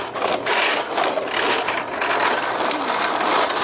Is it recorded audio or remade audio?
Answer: recorded